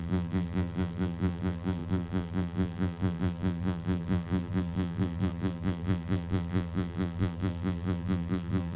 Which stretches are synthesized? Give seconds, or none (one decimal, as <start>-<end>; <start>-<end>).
0.0-8.8